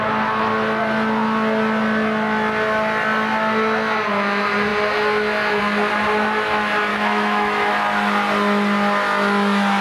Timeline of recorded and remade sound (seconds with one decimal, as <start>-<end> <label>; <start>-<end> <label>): 0.0-6.9 recorded; 6.9-7.7 remade; 7.7-9.8 recorded